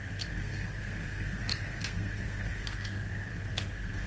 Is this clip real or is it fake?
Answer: fake